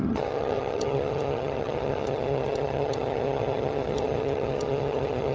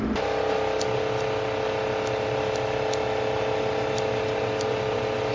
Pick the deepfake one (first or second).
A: first